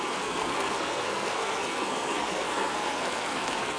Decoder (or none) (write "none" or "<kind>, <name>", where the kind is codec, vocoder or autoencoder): codec, SNAC